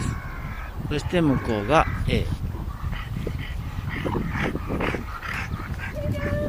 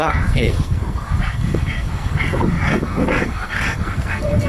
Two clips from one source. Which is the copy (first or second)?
second